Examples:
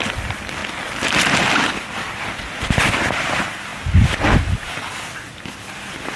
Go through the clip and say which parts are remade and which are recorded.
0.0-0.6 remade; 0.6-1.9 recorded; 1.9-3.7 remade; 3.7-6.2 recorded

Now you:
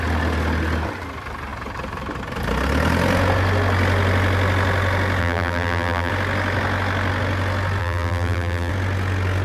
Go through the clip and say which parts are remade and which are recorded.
0.0-5.2 recorded; 5.2-6.1 remade; 6.1-7.8 recorded; 7.8-8.7 remade; 8.7-9.4 recorded

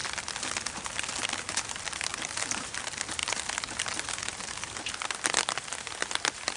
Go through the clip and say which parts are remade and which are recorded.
0.0-2.1 recorded; 2.1-2.8 remade; 2.8-6.6 recorded

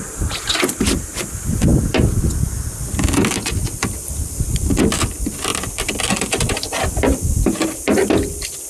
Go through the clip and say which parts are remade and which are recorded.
0.0-8.7 recorded